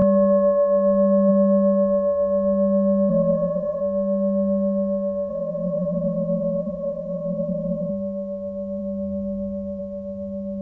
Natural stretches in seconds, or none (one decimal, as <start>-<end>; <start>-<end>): 0.0-3.1; 3.8-5.3; 7.9-10.6